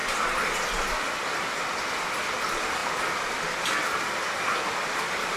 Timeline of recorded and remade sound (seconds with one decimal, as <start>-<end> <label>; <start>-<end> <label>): 0.0-5.4 recorded